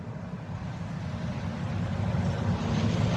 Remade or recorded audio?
recorded